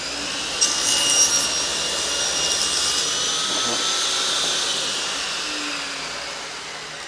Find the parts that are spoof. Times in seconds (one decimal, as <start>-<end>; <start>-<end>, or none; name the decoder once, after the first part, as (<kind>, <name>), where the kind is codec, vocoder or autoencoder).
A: none